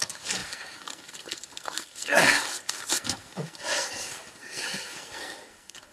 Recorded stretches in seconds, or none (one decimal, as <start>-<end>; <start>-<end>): none